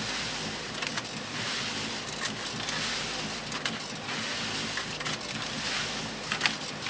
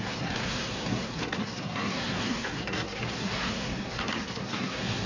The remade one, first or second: second